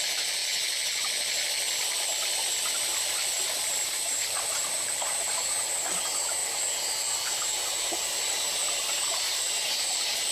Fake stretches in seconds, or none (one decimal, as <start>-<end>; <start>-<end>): 0.0-6.4; 8.3-10.3